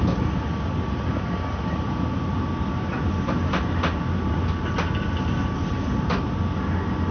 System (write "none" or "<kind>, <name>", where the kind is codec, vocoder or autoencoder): none